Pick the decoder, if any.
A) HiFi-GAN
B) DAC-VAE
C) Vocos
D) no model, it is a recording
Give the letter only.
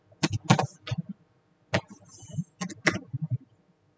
D